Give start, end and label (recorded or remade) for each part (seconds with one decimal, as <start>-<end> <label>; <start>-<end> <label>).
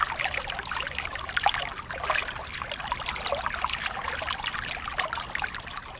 0.0-6.0 recorded